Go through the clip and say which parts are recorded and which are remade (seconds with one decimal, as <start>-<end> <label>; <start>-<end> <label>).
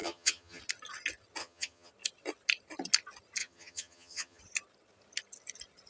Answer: 0.0-0.6 remade; 0.6-1.4 recorded; 1.4-1.9 remade; 1.9-3.4 recorded; 3.4-4.4 remade; 4.4-5.9 recorded